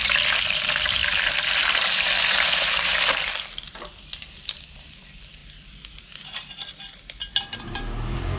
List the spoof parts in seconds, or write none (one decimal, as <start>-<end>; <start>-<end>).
0.0-5.4; 7.6-8.4